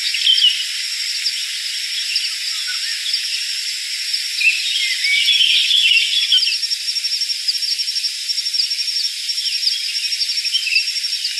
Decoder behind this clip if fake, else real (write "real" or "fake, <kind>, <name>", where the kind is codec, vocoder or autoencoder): real